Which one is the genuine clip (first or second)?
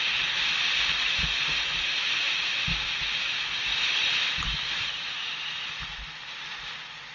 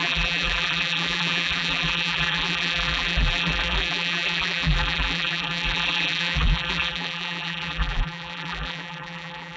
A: first